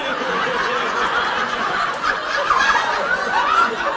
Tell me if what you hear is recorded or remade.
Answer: remade